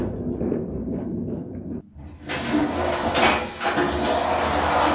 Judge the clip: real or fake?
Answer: real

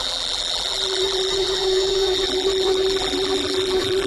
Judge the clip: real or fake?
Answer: fake